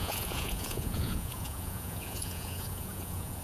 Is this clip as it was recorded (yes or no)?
no